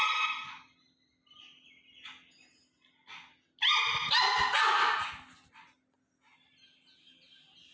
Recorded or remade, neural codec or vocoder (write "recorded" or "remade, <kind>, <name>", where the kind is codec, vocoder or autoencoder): recorded